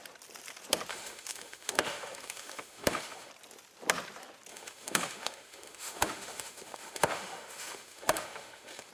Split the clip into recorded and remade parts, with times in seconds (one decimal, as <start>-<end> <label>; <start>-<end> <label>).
0.0-0.9 recorded; 0.9-3.3 remade; 3.3-4.5 recorded; 4.5-8.9 remade